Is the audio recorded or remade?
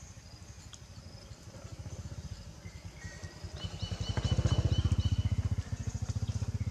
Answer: recorded